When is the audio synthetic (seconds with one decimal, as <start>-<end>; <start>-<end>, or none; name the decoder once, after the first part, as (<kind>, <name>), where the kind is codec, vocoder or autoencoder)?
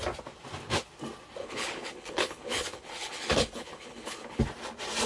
1.4-4.4 (codec, HILCodec)